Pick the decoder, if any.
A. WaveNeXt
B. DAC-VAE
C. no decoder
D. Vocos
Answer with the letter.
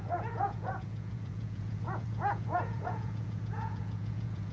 D